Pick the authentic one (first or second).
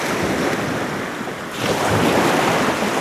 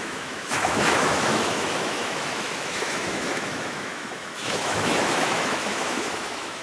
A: first